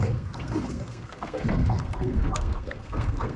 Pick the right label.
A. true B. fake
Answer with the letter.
B